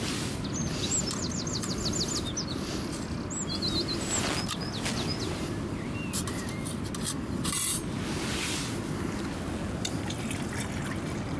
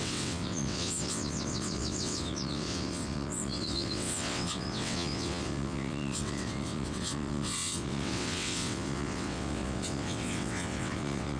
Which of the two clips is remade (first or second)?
second